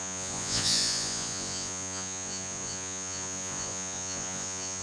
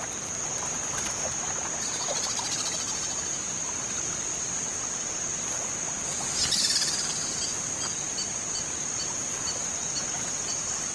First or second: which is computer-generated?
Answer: first